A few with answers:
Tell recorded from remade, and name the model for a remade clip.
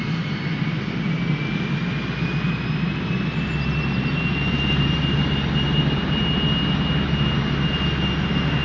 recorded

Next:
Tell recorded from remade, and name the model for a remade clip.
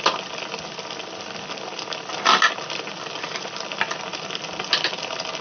recorded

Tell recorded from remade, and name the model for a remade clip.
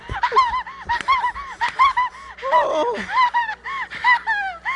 recorded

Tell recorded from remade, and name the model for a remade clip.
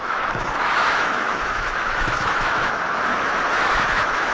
remade, autoencoder, DAC-VAE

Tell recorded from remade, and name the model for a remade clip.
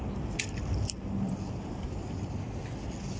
recorded